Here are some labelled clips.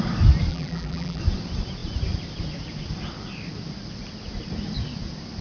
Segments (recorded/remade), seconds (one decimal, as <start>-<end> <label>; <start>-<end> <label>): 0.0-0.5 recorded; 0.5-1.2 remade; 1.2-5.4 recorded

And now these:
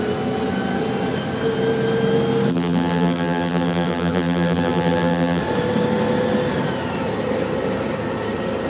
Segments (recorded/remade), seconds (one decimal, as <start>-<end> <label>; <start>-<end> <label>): 0.0-2.5 recorded; 2.5-5.4 remade; 5.4-8.7 recorded

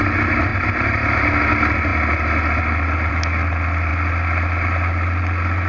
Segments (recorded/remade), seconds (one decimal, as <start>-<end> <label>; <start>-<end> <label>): 0.0-0.5 recorded; 0.5-1.3 remade; 1.3-5.7 recorded

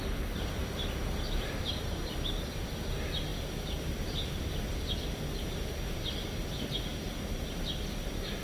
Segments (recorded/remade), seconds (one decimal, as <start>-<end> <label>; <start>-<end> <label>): 0.0-8.4 recorded

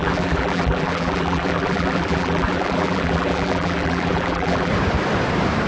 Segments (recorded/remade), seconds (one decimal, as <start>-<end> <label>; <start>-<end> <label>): 0.0-4.7 remade; 4.7-5.7 recorded

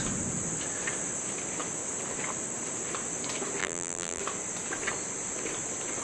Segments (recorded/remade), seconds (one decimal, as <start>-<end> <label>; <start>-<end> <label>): 0.0-3.6 recorded; 3.6-4.2 remade; 4.2-6.0 recorded

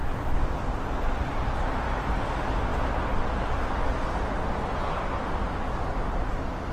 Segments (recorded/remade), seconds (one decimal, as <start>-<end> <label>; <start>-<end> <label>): 0.0-6.7 recorded

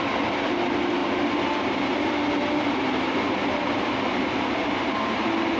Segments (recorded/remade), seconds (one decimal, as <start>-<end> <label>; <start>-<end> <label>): 0.0-1.0 recorded; 1.0-4.4 remade; 4.4-5.6 recorded